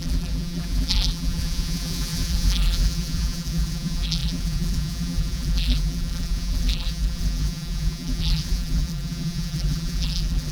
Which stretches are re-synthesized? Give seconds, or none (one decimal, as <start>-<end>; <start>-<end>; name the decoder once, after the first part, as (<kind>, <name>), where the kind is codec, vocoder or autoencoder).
0.0-10.5 (vocoder, BigVGAN v2)